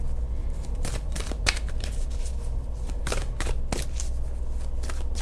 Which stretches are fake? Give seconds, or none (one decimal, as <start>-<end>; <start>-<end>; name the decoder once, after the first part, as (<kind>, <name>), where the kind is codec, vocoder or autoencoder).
0.4-3.5 (vocoder, BigVGAN v2)